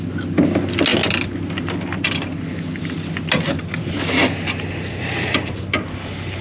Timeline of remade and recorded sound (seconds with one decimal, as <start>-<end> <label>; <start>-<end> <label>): 0.0-6.4 recorded